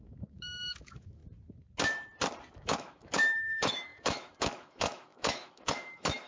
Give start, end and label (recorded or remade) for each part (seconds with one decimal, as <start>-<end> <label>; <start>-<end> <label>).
0.0-1.2 remade; 1.2-2.5 recorded; 2.5-6.3 remade